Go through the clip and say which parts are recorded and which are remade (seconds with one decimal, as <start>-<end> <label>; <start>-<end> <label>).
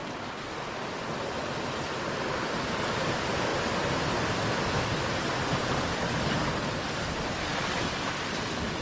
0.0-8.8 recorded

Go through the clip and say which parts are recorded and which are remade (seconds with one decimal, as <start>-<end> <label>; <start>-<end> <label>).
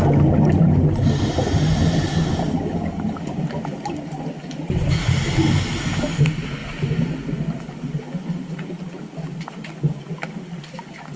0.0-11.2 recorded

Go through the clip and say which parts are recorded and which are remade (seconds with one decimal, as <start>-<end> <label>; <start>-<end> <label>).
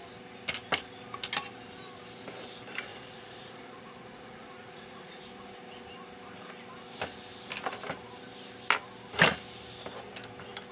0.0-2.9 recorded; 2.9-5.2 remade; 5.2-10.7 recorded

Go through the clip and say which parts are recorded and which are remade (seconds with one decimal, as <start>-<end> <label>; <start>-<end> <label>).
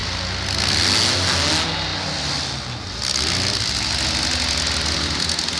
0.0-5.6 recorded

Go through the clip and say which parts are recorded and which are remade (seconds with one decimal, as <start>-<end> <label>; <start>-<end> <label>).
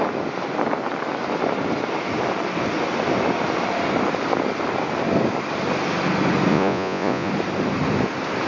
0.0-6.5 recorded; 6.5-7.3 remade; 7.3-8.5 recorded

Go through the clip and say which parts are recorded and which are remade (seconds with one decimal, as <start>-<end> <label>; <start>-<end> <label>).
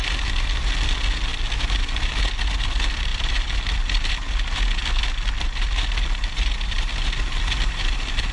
0.0-8.3 recorded